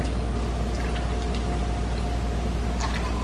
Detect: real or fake real